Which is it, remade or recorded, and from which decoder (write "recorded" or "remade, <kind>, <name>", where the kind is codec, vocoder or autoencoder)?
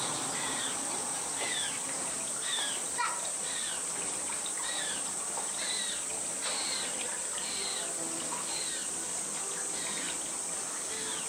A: remade, vocoder, BigVGAN v2